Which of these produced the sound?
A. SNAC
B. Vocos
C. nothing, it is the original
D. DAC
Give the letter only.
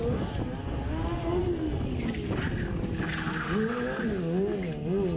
C